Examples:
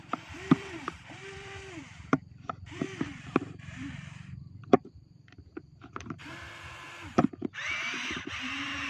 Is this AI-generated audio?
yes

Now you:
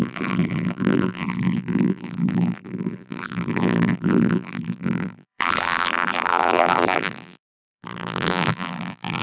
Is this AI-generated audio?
yes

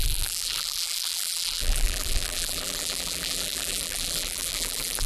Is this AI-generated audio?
yes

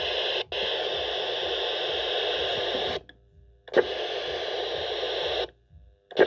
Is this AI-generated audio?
no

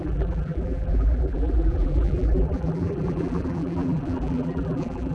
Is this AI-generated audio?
yes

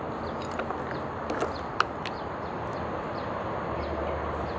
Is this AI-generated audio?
no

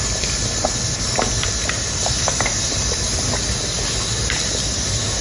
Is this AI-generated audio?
no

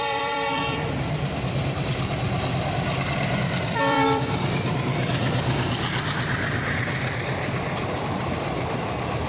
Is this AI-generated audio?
yes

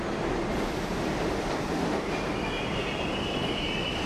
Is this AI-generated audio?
no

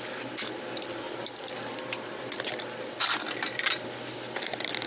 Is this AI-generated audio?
yes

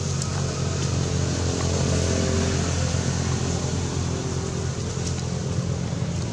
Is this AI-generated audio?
no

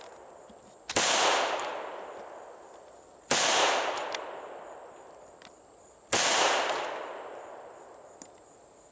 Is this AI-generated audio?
no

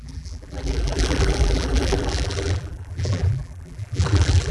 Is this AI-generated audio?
yes